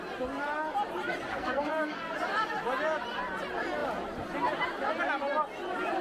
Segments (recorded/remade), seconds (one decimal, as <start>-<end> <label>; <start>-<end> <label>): 0.0-1.3 recorded; 1.3-2.1 remade; 2.1-6.0 recorded